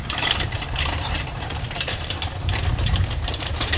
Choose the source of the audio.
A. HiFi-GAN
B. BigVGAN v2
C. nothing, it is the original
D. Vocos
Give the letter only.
B